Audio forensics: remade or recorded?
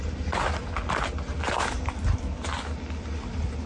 recorded